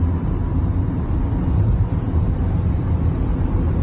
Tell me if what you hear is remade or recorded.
remade